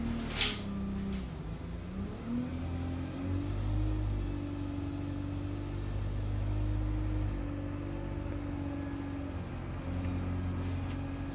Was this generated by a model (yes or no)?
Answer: no